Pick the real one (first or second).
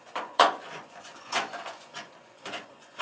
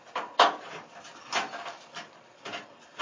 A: second